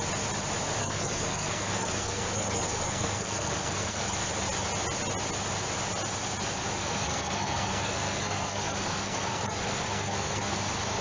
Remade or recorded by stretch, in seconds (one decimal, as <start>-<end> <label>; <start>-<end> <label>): 0.0-0.8 recorded; 0.8-4.3 remade; 4.3-6.8 recorded; 6.8-10.6 remade; 10.6-11.0 recorded